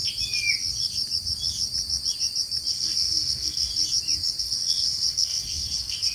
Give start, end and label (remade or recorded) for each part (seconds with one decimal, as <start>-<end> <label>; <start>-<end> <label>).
0.0-2.7 recorded; 2.7-3.7 remade; 3.7-4.4 recorded; 4.4-6.1 remade